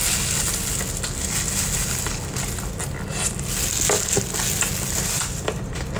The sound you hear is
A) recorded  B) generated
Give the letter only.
A